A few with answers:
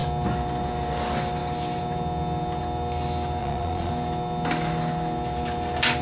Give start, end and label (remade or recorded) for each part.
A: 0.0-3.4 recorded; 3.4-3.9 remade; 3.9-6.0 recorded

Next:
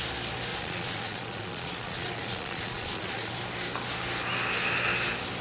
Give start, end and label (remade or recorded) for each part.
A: 0.0-0.5 recorded; 0.5-3.3 remade; 3.3-5.4 recorded

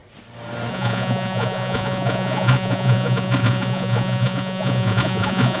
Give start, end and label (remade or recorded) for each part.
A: 0.0-0.7 recorded; 0.7-5.6 remade

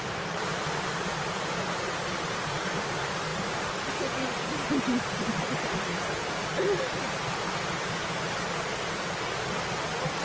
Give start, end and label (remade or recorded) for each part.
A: 0.0-10.2 recorded

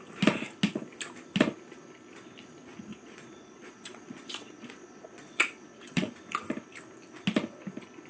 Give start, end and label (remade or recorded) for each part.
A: 0.0-2.9 recorded; 2.9-6.1 remade; 6.1-8.1 recorded